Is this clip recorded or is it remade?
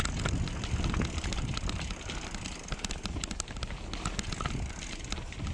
recorded